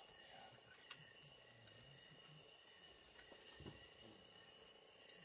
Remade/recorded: recorded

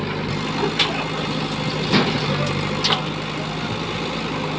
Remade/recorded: recorded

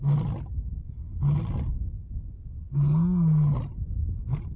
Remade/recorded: recorded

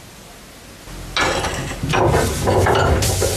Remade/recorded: recorded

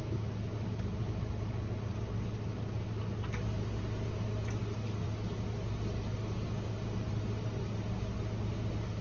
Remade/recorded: recorded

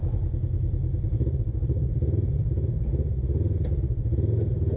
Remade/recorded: recorded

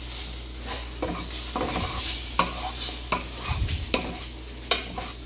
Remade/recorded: recorded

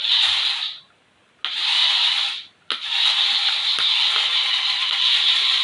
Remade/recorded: recorded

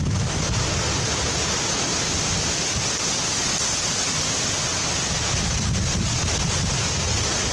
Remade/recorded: recorded